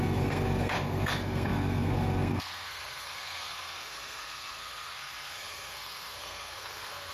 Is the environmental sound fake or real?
fake